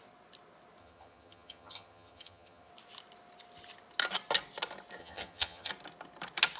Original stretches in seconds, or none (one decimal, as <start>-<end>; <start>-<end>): 0.0-0.8; 2.7-5.0; 5.7-6.6